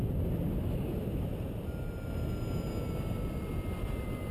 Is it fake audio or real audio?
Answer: real